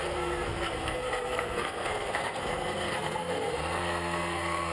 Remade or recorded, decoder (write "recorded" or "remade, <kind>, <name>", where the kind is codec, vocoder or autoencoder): remade, codec, SNAC